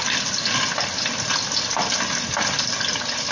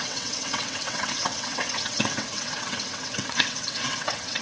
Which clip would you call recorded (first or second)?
first